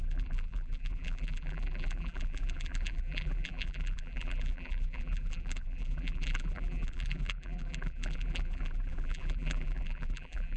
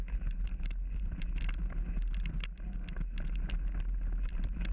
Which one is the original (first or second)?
second